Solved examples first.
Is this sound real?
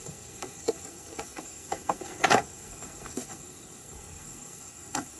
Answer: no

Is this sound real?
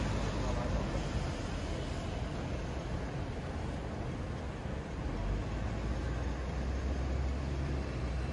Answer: yes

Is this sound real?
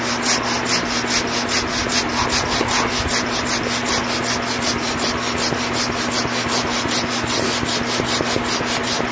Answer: yes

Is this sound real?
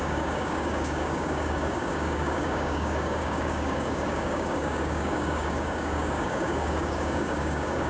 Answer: no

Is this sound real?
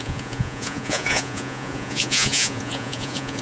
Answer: no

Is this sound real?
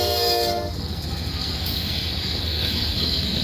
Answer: no